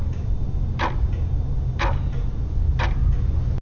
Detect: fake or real real